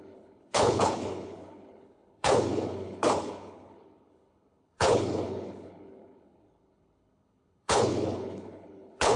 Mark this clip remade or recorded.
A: remade